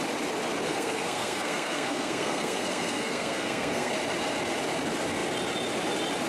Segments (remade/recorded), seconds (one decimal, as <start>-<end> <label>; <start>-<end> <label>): 0.0-0.7 recorded; 0.7-3.9 remade; 3.9-6.3 recorded